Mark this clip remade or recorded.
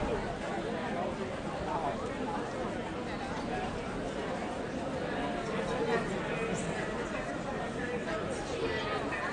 recorded